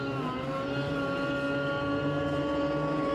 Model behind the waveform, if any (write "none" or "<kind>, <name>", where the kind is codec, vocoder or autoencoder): none